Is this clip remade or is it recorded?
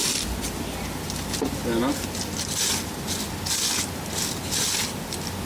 recorded